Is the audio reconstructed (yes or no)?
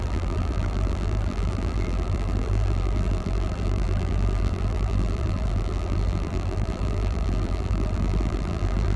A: yes